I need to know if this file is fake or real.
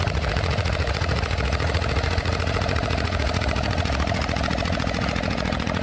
fake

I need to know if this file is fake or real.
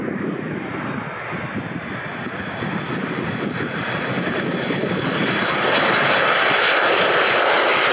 real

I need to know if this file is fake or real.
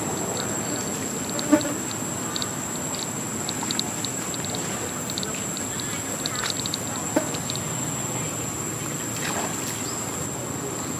real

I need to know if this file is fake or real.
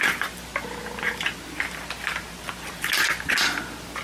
real